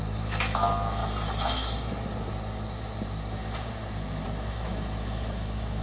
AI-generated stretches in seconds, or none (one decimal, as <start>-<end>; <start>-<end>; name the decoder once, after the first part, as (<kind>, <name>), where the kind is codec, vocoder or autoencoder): 0.0-1.0 (autoencoder, DAC-VAE); 4.5-5.8